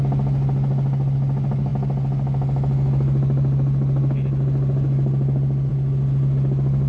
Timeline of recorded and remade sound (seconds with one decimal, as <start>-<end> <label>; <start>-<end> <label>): 0.0-6.9 recorded